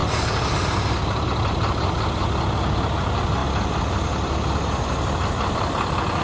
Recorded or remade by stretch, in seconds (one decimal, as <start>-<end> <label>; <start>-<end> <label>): 0.0-6.2 recorded